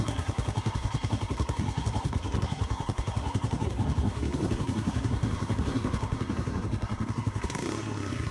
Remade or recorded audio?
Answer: remade